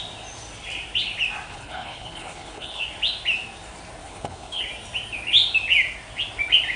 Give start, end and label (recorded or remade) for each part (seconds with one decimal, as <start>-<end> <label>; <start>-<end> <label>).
0.0-1.5 recorded; 1.5-2.8 remade; 2.8-4.0 recorded; 4.0-4.6 remade; 4.6-6.8 recorded